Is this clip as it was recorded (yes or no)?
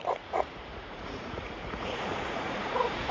no